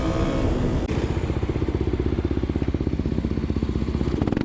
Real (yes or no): yes